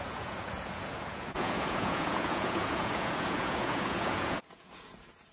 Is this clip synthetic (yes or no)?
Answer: yes